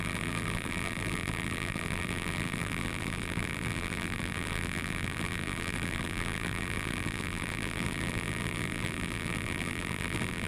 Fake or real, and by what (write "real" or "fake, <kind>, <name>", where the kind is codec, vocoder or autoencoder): fake, vocoder, BigVGAN v2